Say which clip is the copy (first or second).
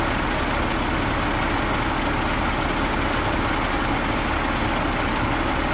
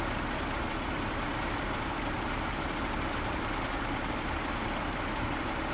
second